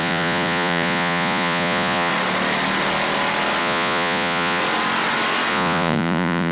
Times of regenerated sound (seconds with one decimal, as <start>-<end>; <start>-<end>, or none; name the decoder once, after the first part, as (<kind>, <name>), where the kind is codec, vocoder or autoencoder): 0.0-2.1 (vocoder, Vocos); 3.6-4.6; 5.5-6.5